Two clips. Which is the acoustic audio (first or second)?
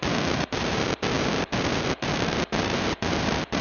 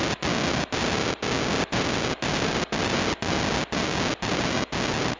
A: second